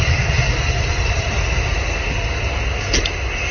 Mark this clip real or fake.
real